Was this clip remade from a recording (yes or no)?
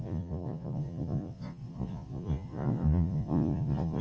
yes